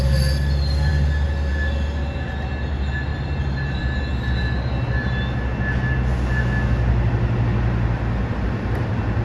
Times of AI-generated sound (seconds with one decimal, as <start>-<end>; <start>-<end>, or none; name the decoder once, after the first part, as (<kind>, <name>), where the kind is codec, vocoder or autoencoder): 3.1-4.0 (vocoder, BigVGAN v2)